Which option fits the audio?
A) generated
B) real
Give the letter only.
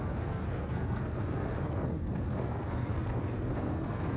A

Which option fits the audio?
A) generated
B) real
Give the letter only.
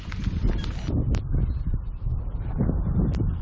B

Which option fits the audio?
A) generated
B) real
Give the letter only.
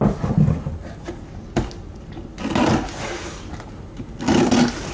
B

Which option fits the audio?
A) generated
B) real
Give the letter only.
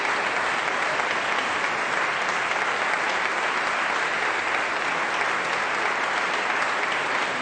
B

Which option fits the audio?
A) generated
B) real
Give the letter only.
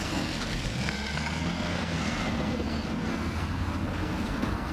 A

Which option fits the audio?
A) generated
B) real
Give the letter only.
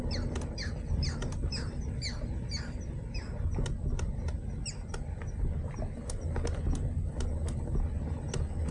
B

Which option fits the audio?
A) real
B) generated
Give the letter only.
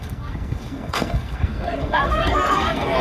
B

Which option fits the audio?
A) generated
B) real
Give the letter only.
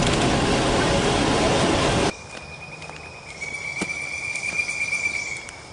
B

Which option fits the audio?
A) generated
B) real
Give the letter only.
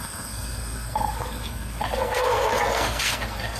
A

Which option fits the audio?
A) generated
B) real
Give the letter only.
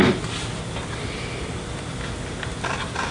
B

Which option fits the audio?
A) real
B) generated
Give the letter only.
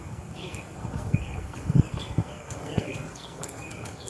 B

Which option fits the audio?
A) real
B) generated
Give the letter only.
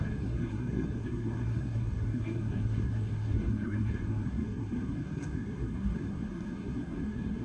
B